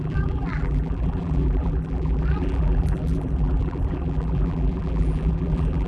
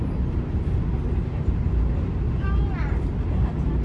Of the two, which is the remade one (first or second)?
first